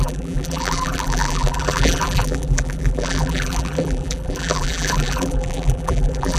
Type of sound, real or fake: fake